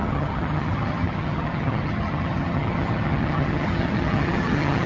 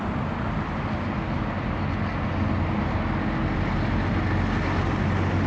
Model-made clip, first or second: first